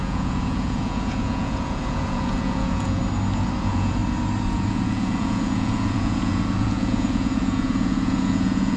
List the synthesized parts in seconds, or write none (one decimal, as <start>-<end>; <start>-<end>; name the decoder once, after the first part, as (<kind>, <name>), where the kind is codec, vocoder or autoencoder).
0.0-3.0 (vocoder, Vocos); 3.6-4.0; 4.5-8.8